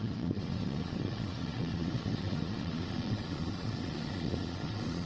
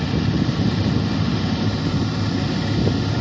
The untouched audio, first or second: second